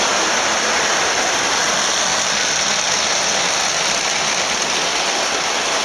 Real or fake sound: real